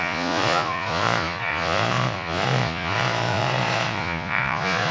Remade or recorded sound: remade